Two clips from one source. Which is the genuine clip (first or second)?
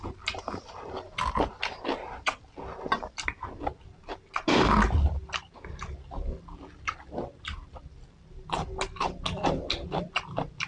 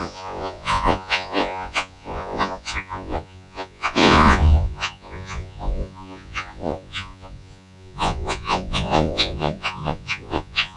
first